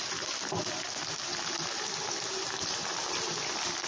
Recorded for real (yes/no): yes